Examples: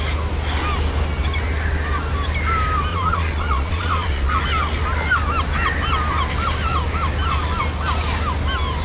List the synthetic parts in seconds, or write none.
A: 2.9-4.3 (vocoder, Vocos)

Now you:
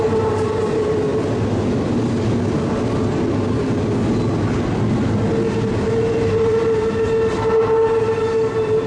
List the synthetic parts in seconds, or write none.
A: none

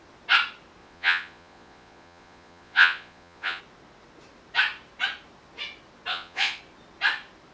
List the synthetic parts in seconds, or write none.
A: 0.8-3.6 (vocoder, Vocos); 6.1-6.6

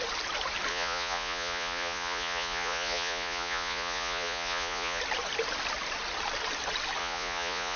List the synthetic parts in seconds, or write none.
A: 0.7-5.0 (vocoder, Vocos); 7.0-7.8